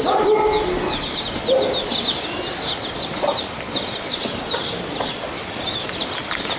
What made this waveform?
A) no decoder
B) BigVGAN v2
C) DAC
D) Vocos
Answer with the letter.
A